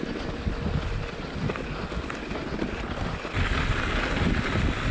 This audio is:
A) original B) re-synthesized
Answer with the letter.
A